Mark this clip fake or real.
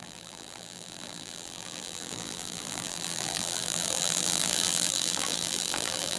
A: fake